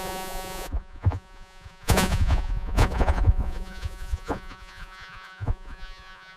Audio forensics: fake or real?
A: fake